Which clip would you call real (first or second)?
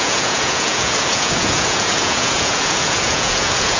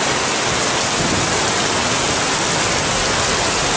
second